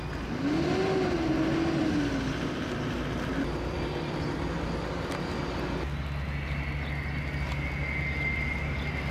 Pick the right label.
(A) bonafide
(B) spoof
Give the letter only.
A